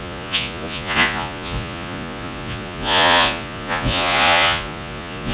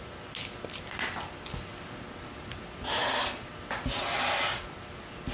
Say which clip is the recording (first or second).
second